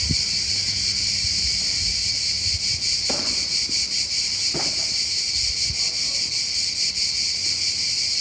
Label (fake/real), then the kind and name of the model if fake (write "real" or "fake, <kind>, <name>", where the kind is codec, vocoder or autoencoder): real